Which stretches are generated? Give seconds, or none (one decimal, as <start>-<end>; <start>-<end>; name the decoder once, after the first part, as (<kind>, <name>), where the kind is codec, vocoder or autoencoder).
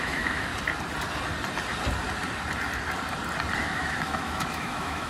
0.0-0.5 (autoencoder, DAC-VAE); 3.6-5.1